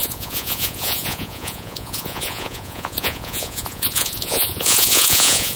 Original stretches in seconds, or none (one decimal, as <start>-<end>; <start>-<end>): none